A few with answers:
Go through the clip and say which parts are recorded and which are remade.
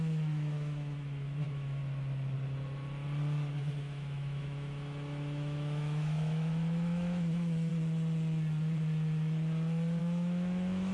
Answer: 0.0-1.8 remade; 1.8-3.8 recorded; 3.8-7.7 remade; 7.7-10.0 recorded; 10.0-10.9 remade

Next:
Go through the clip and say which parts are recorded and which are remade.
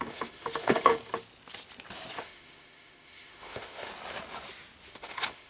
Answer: 0.0-1.0 remade; 1.0-2.2 recorded; 2.2-3.9 remade; 3.9-4.9 recorded; 4.9-5.5 remade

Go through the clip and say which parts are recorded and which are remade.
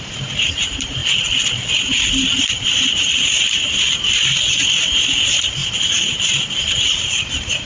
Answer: 0.0-1.0 remade; 1.0-2.5 recorded; 2.5-7.7 remade